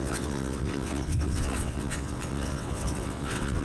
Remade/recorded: remade